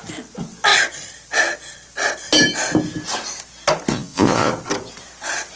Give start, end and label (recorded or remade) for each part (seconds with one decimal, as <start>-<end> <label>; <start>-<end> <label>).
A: 0.0-3.9 recorded; 3.9-4.5 remade; 4.5-5.6 recorded